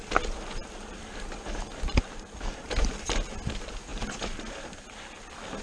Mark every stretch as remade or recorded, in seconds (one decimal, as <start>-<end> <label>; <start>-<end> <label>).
0.0-5.6 recorded